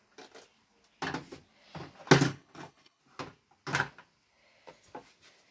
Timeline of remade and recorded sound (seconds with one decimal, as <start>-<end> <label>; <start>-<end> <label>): 0.0-2.3 recorded; 2.3-3.0 remade; 3.0-5.5 recorded